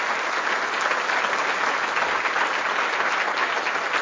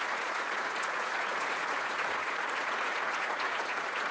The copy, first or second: second